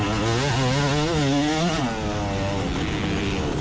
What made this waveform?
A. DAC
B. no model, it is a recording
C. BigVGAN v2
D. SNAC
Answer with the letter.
B